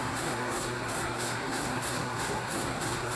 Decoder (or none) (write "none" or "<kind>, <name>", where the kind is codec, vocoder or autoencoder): codec, SNAC